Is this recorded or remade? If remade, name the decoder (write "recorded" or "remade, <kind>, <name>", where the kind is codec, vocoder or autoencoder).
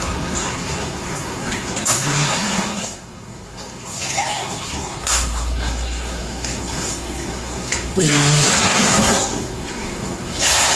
remade, codec, SNAC